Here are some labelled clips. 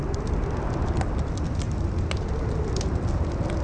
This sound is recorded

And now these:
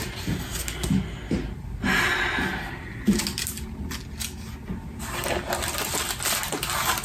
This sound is recorded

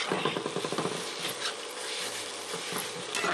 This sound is recorded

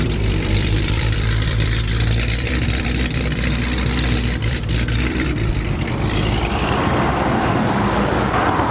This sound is remade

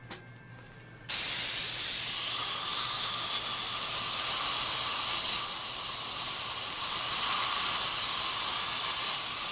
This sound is recorded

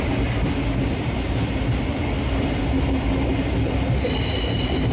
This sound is recorded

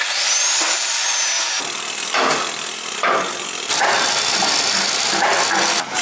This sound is recorded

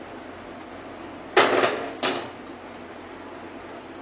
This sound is recorded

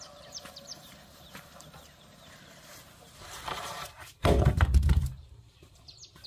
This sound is remade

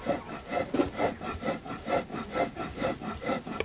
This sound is recorded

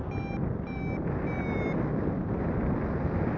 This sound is recorded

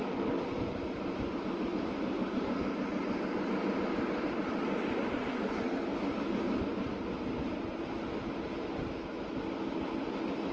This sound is recorded